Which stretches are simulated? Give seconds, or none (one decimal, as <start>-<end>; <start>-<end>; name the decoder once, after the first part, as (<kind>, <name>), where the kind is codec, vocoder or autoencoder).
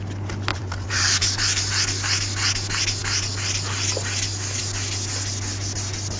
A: 0.5-1.7 (vocoder, BigVGAN v2)